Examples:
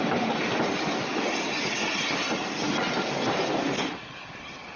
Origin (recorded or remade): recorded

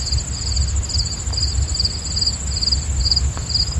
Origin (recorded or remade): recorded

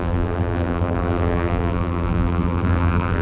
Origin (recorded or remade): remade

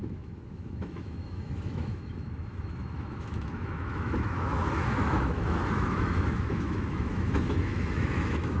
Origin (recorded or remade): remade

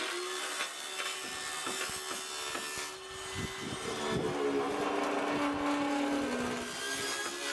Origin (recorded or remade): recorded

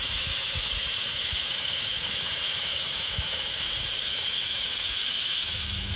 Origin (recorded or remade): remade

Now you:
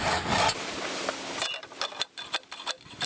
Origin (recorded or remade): recorded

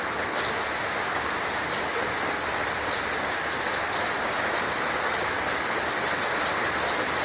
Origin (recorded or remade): recorded